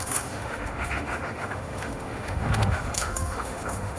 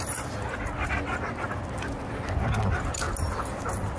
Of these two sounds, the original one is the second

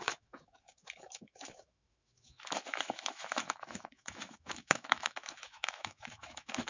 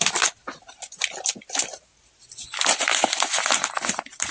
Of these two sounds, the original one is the second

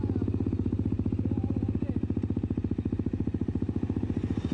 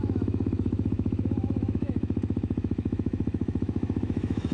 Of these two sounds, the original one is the first